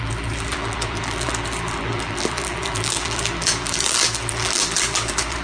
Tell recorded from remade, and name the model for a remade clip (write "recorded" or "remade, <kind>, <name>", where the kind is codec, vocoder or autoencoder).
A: remade, vocoder, BigVGAN v2